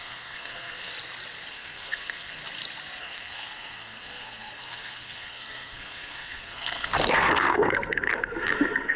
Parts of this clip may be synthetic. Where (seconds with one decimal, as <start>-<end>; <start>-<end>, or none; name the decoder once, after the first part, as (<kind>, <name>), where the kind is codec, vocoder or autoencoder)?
0.0-0.9 (codec, SNAC); 1.5-2.4; 3.0-9.0